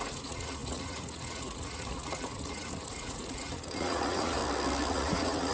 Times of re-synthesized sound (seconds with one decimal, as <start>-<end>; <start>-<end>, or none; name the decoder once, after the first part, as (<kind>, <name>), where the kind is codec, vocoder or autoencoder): 0.0-4.4 (vocoder, Vocos); 4.9-5.5